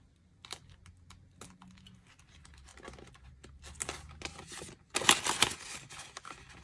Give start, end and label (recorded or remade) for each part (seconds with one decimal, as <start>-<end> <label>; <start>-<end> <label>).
0.0-6.6 recorded